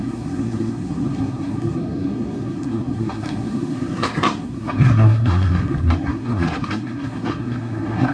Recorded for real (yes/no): no